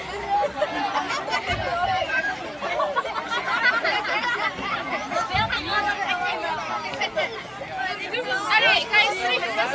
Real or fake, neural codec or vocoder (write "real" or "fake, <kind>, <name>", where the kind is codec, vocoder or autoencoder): real